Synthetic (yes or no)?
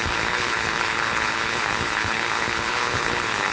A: yes